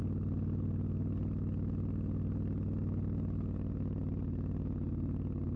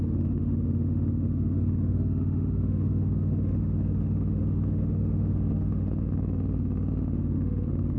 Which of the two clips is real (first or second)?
first